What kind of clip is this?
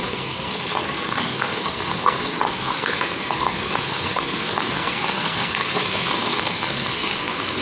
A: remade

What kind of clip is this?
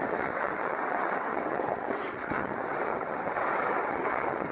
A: remade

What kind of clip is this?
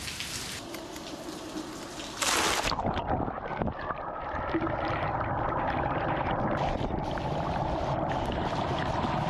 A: recorded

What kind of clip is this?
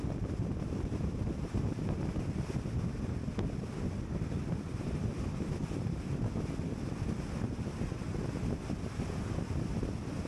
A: recorded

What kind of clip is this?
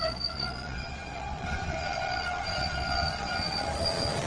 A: remade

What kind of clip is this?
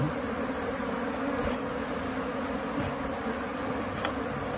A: recorded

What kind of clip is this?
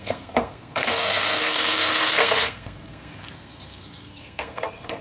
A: remade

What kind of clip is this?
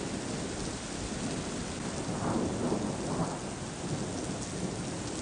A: recorded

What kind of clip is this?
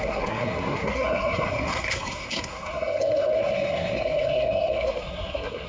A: remade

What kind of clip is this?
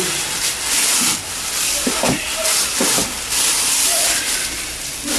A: recorded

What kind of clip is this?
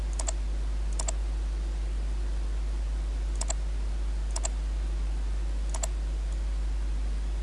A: recorded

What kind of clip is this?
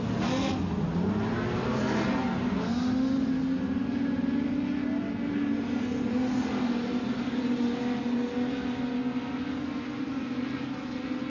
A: recorded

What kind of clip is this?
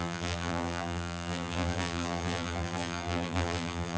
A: remade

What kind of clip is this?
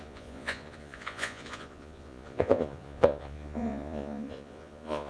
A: remade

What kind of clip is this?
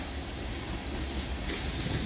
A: recorded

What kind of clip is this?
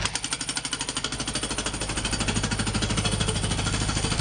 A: recorded